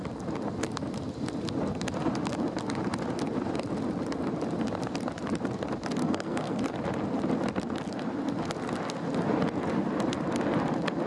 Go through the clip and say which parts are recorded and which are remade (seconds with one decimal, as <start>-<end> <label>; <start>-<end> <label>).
0.0-6.0 recorded; 6.0-6.6 remade; 6.6-11.1 recorded